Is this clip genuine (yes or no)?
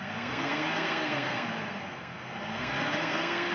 no